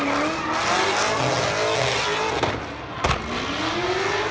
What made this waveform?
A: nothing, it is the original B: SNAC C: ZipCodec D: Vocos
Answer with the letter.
A